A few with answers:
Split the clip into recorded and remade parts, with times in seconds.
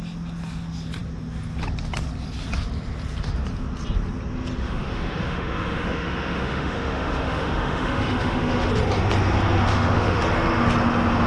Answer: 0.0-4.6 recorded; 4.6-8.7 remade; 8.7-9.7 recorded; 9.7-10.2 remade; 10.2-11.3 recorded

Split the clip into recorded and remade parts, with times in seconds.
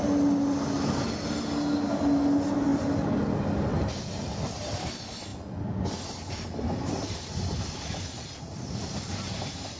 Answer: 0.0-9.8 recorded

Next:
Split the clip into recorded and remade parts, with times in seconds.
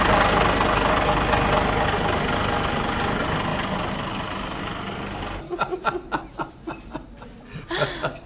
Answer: 0.0-3.5 recorded; 3.5-4.2 remade; 4.2-8.3 recorded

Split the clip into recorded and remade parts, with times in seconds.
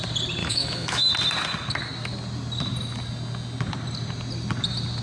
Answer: 0.0-0.4 recorded; 0.4-1.1 remade; 1.1-5.0 recorded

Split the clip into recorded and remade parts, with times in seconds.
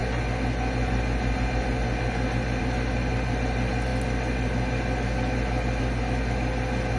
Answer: 0.0-7.0 recorded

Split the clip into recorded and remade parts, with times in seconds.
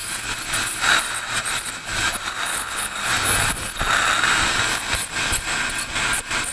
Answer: 0.0-2.5 recorded; 2.5-3.1 remade; 3.1-6.5 recorded